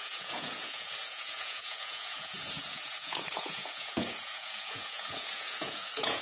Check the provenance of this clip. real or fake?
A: fake